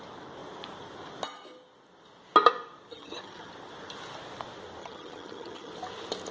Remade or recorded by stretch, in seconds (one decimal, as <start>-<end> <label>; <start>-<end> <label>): 0.0-2.9 recorded; 2.9-3.5 remade; 3.5-4.8 recorded; 4.8-5.7 remade; 5.7-6.3 recorded

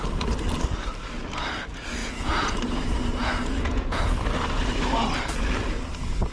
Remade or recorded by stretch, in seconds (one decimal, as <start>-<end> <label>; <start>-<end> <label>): 0.0-2.0 recorded; 2.0-2.5 remade; 2.5-3.2 recorded; 3.2-4.0 remade; 4.0-6.3 recorded

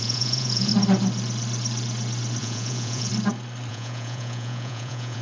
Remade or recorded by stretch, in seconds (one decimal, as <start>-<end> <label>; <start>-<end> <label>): 0.0-0.7 remade; 0.7-2.4 recorded; 2.4-3.1 remade; 3.1-3.7 recorded; 3.7-5.2 remade

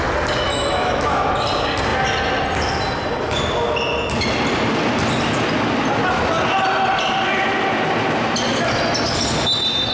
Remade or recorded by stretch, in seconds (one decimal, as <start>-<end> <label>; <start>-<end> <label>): 0.0-0.5 recorded; 0.5-1.3 remade; 1.3-9.9 recorded

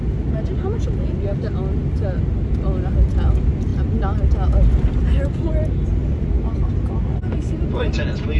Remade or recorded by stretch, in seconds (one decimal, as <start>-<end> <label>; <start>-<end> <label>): 0.0-8.4 recorded

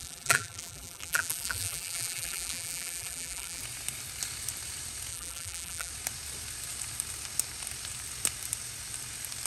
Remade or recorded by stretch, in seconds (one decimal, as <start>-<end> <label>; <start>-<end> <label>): 0.0-3.6 remade; 3.6-5.1 recorded; 5.1-5.9 remade; 5.9-9.5 recorded

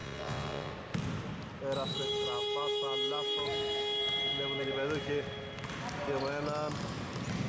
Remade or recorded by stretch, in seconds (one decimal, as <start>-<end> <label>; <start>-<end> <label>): 0.0-0.7 remade; 0.7-7.5 recorded